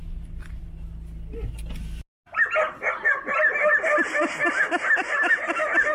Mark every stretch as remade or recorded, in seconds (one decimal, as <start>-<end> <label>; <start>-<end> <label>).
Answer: 0.0-0.6 remade; 0.6-5.9 recorded